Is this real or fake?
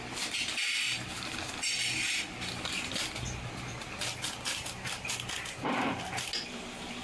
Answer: fake